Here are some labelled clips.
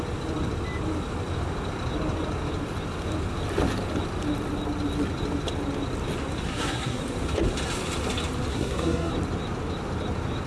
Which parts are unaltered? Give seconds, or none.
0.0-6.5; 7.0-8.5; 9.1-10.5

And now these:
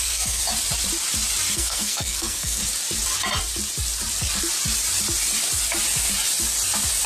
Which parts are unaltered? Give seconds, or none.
0.4-1.5; 2.6-7.1

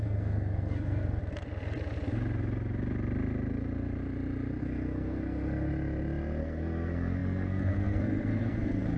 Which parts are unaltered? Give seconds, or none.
1.2-4.6; 5.7-6.4

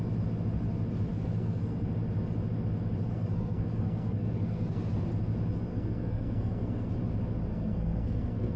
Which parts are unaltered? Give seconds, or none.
0.0-1.1; 1.9-3.1; 4.8-5.7; 6.9-7.5

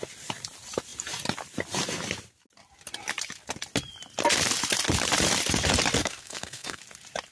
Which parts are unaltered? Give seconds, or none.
0.0-6.0; 6.8-7.3

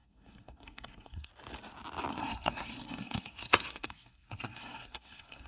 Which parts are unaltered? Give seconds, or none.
1.3-2.1